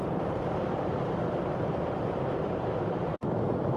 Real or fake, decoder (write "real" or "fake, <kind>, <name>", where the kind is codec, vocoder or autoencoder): fake, vocoder, BigVGAN v2